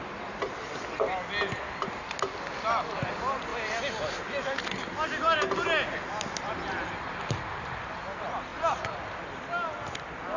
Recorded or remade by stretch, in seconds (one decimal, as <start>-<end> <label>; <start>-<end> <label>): 0.0-10.4 recorded